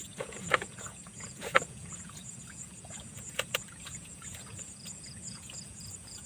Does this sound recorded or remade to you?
remade